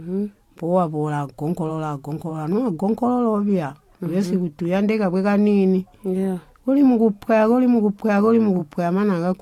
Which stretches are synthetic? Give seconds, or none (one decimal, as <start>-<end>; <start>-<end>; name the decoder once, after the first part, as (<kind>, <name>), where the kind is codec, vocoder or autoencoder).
1.7-2.3 (autoencoder, DAC-VAE); 8.6-9.4